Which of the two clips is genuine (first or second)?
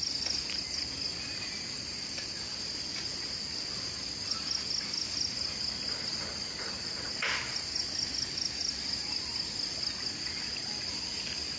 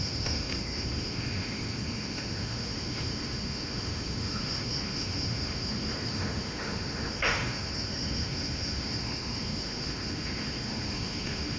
first